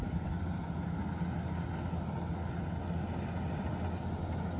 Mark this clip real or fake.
real